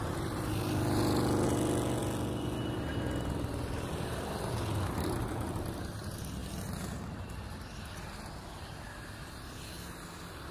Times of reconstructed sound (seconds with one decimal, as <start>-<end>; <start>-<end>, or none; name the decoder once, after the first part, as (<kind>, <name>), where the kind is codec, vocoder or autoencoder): none